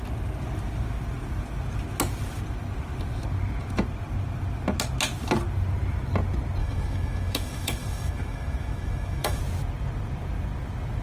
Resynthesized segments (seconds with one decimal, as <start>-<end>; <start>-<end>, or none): 6.6-9.4